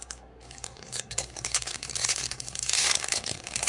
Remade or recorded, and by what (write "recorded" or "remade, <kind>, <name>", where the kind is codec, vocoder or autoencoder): remade, codec, SNAC